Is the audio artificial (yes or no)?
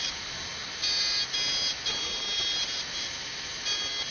no